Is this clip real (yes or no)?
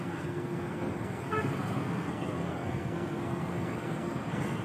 no